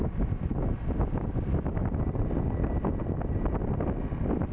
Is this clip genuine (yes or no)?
yes